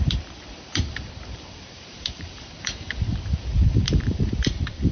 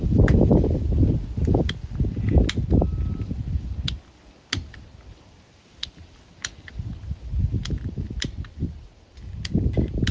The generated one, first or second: first